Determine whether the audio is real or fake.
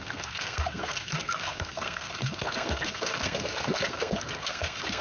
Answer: fake